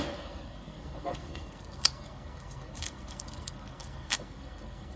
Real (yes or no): no